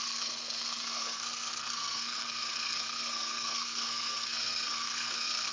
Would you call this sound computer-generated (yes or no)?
yes